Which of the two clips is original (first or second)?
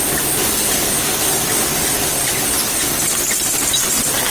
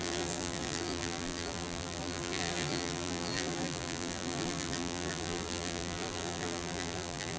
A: first